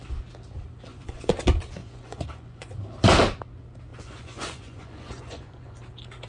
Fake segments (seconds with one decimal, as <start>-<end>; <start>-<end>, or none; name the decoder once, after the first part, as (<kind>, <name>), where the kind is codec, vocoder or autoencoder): 0.9-1.4 (vocoder, Vocos); 1.8-2.7; 3.9-5.8